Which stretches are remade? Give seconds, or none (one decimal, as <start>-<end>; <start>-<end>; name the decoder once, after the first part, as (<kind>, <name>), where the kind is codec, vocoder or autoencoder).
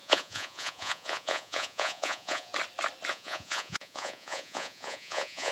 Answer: 0.0-2.5 (vocoder, Vocos); 3.1-5.5